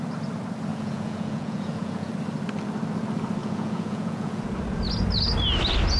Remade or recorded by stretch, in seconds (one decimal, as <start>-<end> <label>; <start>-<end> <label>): 0.0-0.7 recorded; 0.7-2.1 remade; 2.1-3.4 recorded; 3.4-4.4 remade; 4.4-6.0 recorded